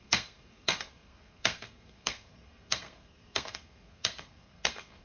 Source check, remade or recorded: remade